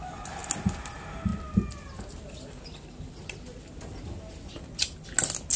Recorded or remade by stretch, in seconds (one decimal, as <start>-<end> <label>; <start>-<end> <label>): 0.0-5.6 recorded